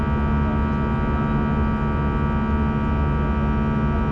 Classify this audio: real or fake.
real